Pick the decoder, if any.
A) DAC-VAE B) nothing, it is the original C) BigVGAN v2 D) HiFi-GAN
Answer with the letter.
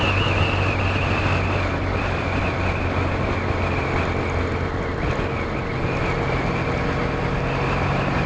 B